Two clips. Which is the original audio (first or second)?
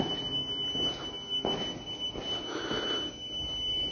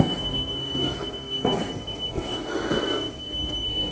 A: first